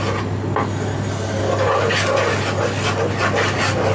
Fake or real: real